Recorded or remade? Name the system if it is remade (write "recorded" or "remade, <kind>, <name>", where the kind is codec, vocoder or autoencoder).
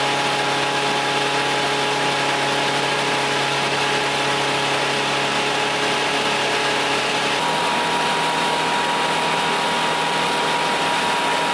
recorded